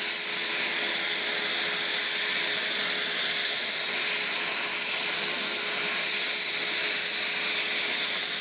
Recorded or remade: recorded